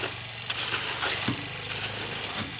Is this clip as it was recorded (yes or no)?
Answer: yes